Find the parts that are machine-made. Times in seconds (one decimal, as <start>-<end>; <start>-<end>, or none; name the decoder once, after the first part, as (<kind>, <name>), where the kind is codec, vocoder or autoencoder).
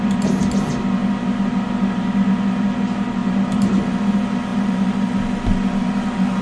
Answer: none